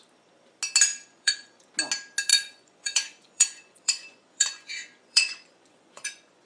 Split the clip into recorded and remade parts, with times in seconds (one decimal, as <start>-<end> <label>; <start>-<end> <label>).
0.0-0.9 recorded; 0.9-1.7 remade; 1.7-2.3 recorded; 2.3-6.5 remade